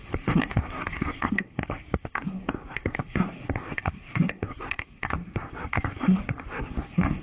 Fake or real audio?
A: fake